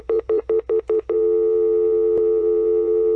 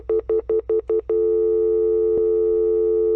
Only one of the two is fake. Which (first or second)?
first